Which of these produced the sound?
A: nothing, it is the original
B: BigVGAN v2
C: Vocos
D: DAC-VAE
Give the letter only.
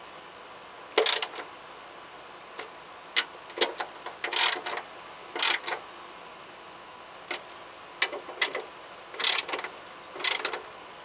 A